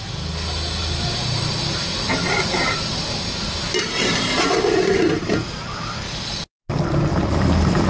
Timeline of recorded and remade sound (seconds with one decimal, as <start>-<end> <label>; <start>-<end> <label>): 0.0-0.8 recorded; 0.8-1.8 remade; 1.8-2.2 recorded; 2.2-5.8 remade; 5.8-7.1 recorded; 7.1-7.9 remade